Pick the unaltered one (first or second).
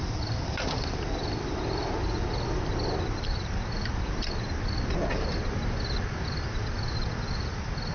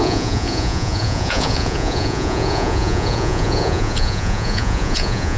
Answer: first